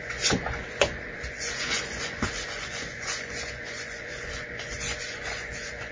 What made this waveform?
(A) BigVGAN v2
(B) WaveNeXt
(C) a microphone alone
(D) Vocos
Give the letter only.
D